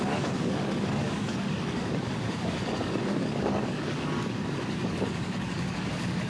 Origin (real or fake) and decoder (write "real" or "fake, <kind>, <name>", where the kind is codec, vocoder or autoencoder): fake, codec, DAC